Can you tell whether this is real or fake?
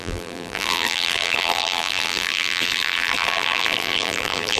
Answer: fake